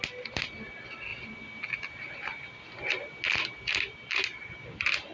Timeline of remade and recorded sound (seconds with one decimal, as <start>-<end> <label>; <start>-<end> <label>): 0.0-5.1 recorded